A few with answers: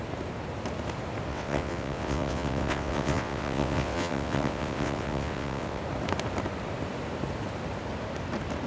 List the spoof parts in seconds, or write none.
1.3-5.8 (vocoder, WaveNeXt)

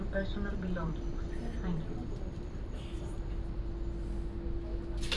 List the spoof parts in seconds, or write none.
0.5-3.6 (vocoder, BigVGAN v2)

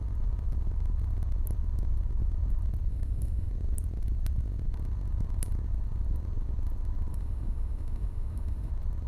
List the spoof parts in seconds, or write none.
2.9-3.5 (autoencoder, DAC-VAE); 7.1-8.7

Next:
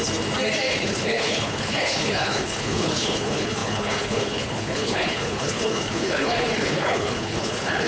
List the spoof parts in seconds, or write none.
0.7-7.9 (codec, HILCodec)